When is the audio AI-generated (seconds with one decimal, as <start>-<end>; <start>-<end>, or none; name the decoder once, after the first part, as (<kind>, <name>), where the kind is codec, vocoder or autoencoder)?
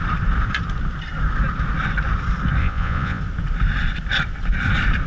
2.6-3.2 (vocoder, Vocos)